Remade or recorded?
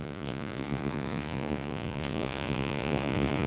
remade